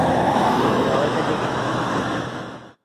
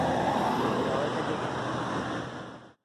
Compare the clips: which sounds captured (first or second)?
second